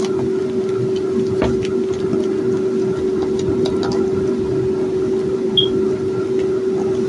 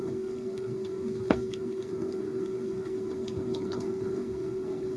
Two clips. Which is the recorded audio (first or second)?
first